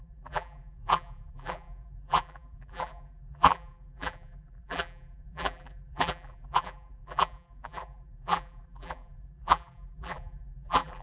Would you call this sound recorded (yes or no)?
no